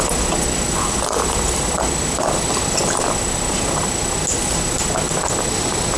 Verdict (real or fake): real